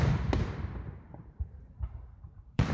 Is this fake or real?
fake